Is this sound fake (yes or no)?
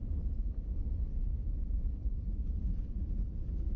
yes